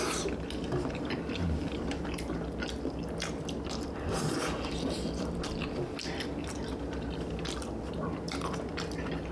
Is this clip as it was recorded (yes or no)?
no